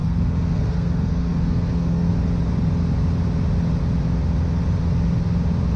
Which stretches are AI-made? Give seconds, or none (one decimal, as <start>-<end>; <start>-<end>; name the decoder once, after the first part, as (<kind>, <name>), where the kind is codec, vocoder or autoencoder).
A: 0.0-2.1 (codec, SNAC)